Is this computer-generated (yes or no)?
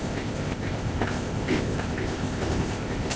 yes